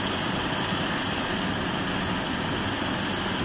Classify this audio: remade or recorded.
recorded